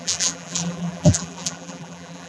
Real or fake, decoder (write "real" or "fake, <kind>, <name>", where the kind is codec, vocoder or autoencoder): fake, vocoder, BigVGAN v2